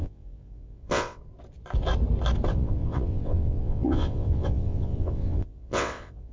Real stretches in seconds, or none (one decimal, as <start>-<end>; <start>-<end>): 1.2-2.5